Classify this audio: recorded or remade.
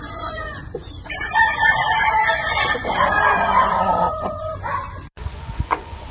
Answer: remade